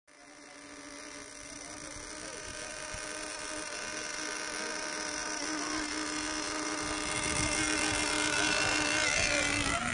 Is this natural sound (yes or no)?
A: yes